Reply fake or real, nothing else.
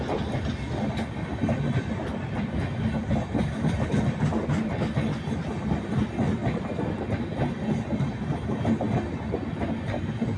real